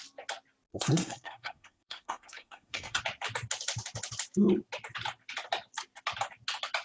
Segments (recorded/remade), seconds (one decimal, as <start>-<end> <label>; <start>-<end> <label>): 0.0-0.7 recorded; 0.7-3.0 remade; 3.0-6.8 recorded